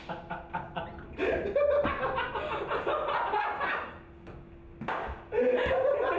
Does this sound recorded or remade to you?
recorded